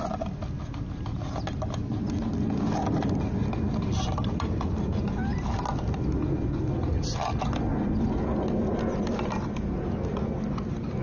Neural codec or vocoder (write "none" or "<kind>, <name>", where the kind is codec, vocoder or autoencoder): none